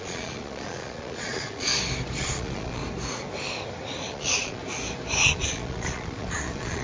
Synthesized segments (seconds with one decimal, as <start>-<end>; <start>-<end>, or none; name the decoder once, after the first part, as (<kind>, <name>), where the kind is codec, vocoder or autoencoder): 0.0-1.7 (vocoder, Vocos); 2.2-2.8; 4.1-4.6; 5.2-6.8